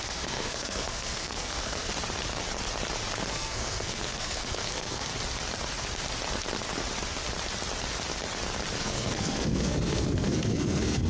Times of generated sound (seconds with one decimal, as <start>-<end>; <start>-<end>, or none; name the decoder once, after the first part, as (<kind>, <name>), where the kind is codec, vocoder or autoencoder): 0.0-1.9 (codec, SNAC); 3.3-5.1; 8.8-11.1